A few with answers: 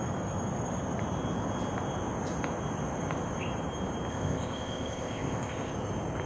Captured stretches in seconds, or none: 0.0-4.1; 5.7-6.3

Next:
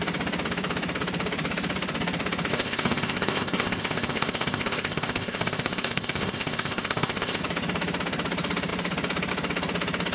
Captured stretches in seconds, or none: 0.0-2.5; 7.4-10.1

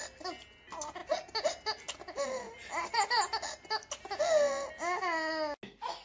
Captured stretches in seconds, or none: 0.0-6.0